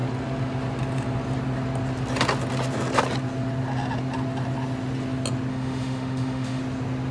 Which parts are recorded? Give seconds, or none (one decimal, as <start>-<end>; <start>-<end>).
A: 0.0-5.5; 6.6-7.1